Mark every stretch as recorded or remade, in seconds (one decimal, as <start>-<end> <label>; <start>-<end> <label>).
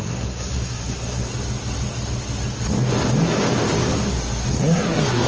0.0-1.3 remade; 1.3-4.5 recorded; 4.5-5.3 remade